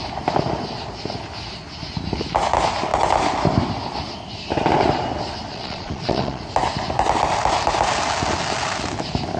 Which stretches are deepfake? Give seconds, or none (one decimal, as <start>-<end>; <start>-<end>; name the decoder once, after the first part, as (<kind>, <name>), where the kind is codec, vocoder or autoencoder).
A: 5.5-6.4 (vocoder, Vocos)